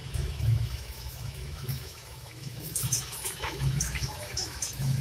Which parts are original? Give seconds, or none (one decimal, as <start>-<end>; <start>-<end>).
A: none